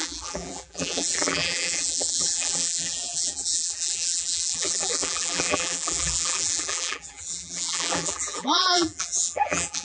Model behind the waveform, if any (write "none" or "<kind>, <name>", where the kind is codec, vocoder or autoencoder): vocoder, BigVGAN v2